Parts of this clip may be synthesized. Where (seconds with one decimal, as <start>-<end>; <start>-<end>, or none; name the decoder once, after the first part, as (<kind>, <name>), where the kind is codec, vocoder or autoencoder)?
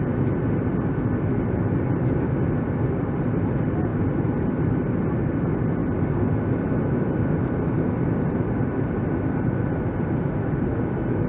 3.9-5.1 (vocoder, BigVGAN v2)